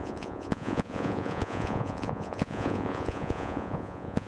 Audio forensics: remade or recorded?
remade